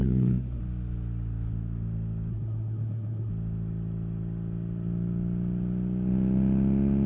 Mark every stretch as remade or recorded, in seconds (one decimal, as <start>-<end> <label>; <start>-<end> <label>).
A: 0.0-0.6 remade; 0.6-2.3 recorded; 2.3-3.3 remade; 3.3-7.1 recorded